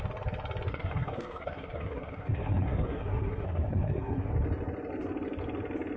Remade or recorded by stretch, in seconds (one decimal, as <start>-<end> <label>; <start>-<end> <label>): 0.0-0.7 recorded; 0.7-4.3 remade; 4.3-6.0 recorded